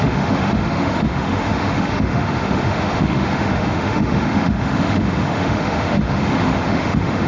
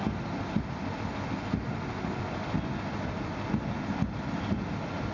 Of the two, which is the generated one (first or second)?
first